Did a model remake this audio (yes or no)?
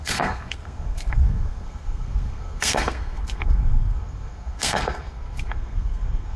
yes